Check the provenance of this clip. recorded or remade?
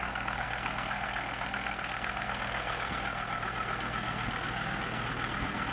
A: remade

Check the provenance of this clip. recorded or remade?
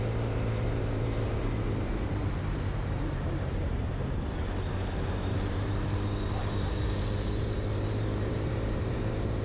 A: remade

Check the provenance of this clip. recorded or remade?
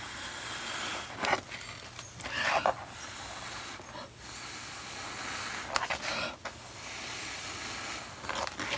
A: recorded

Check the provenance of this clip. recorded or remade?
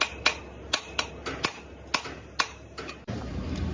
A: recorded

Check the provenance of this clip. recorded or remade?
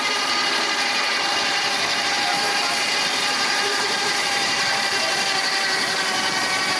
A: remade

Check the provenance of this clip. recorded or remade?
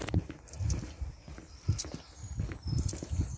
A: remade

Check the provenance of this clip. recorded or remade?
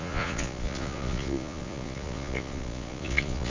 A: remade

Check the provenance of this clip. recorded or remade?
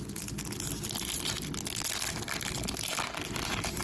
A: recorded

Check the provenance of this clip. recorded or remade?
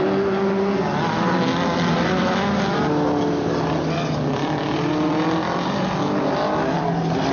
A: recorded